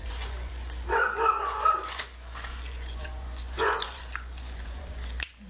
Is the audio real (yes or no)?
no